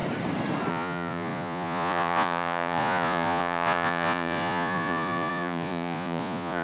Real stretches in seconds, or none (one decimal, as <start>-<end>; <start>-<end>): 0.0-0.7